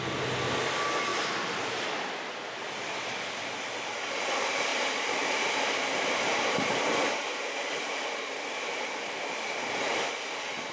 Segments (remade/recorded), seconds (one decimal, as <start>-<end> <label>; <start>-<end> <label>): 0.0-1.1 recorded; 1.1-1.9 remade; 1.9-4.7 recorded; 4.7-7.2 remade; 7.2-10.7 recorded